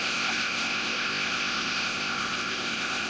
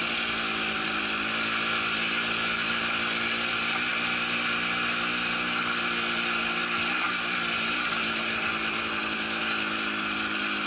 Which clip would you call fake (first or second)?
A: first